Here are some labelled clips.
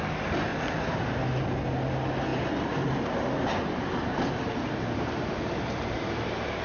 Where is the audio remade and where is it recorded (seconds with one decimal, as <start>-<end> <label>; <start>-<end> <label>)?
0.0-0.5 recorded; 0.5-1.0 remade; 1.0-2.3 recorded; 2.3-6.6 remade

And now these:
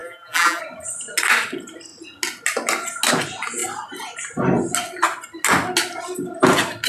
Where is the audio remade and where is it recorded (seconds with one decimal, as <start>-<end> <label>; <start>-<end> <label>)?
0.0-0.6 remade; 0.6-6.9 recorded

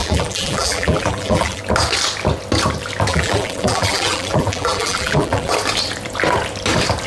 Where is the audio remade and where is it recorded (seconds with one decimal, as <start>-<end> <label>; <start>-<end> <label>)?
0.0-1.6 remade; 1.6-3.1 recorded; 3.1-5.5 remade; 5.5-7.1 recorded